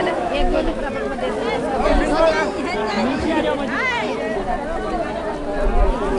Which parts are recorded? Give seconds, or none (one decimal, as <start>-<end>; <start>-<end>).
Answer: 0.8-2.8; 3.4-6.2